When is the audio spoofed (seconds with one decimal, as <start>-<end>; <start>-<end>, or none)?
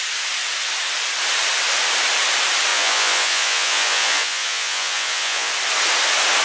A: 2.7-5.5